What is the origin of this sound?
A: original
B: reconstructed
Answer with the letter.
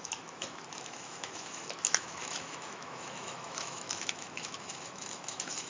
B